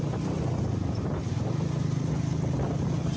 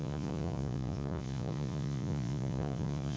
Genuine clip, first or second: first